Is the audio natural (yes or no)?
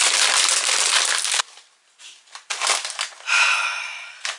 yes